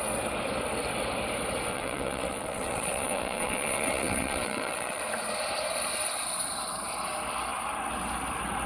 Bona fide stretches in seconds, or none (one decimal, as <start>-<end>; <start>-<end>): 0.0-1.7; 5.0-8.7